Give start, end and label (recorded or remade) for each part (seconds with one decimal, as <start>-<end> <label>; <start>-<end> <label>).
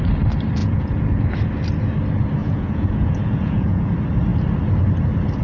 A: 0.0-0.6 recorded; 0.6-1.2 remade; 1.2-2.4 recorded; 2.4-3.9 remade; 3.9-5.4 recorded